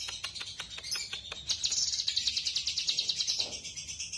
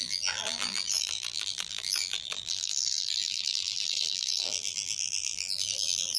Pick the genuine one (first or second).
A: first